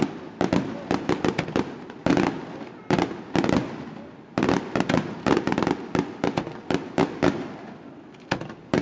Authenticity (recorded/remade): recorded